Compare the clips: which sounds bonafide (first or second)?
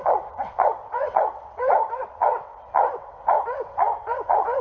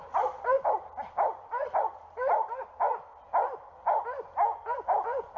second